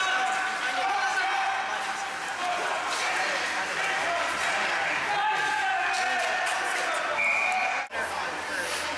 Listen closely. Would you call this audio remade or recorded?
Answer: recorded